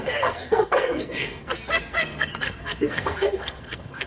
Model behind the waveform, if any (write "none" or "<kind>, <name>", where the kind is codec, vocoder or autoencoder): codec, SNAC